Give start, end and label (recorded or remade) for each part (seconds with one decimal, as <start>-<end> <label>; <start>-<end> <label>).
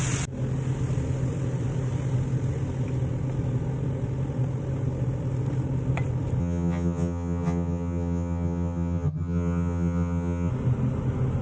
0.0-6.4 recorded; 6.4-10.5 remade; 10.5-11.4 recorded